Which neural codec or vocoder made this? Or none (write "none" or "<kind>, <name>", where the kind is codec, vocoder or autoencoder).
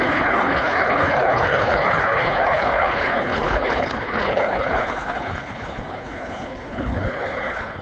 codec, HILCodec